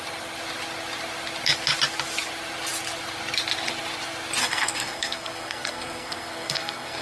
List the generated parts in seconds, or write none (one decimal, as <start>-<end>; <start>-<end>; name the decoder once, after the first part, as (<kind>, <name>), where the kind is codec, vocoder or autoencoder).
4.4-7.0 (codec, SNAC)